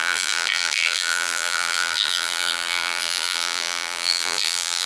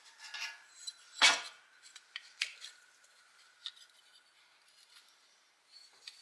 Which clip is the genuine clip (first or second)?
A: second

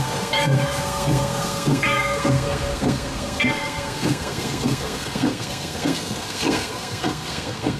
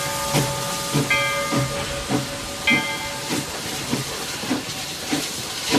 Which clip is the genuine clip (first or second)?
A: second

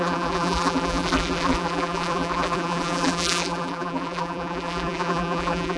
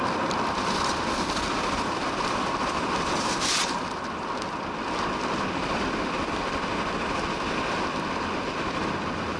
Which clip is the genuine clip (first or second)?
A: second